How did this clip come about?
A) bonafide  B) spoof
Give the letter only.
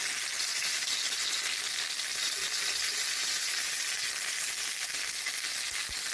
A